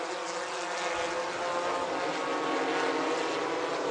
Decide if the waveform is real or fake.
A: real